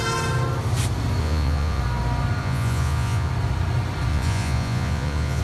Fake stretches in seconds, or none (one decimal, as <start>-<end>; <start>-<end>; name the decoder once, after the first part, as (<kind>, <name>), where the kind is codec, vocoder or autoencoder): 1.2-1.8 (vocoder, Vocos); 2.4-3.3; 4.1-5.4